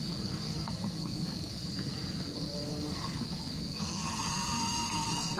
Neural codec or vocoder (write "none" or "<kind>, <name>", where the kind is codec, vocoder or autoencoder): codec, SNAC